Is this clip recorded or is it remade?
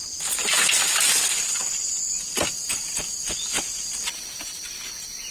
recorded